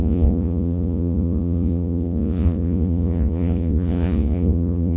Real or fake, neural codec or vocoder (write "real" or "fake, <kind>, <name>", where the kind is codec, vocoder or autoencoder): fake, vocoder, Vocos